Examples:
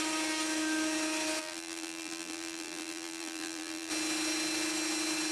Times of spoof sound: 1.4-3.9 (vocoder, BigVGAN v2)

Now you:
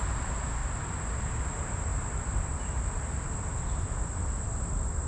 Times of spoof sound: 0.0-0.6 (vocoder, BigVGAN v2); 1.2-1.9

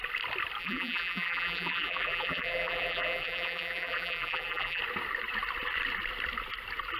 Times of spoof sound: 0.6-4.8 (vocoder, BigVGAN v2)

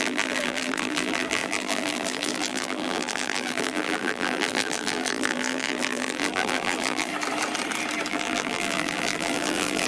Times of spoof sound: 0.0-7.1 (vocoder, BigVGAN v2); 8.1-9.9